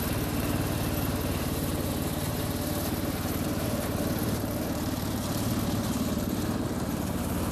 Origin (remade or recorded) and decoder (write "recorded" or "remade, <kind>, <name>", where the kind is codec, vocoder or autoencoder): remade, vocoder, BigVGAN v2